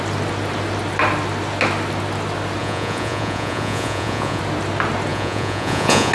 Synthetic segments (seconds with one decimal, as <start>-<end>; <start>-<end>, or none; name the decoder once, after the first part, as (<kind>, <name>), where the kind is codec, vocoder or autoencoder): 2.6-4.4 (vocoder, Vocos); 5.1-6.1